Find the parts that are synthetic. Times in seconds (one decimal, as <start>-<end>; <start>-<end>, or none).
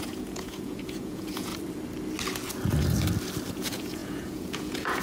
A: 0.0-1.5; 3.5-5.0